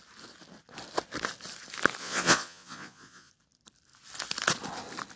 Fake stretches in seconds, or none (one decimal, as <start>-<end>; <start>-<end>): 2.0-3.3